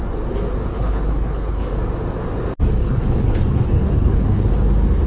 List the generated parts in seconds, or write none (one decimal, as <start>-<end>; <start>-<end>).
0.7-1.7; 2.8-4.5